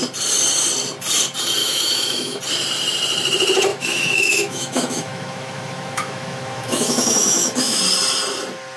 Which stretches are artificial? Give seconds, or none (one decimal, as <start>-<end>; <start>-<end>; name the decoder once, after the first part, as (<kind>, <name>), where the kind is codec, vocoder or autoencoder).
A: 1.6-2.4 (autoencoder, DAC-VAE); 3.7-7.8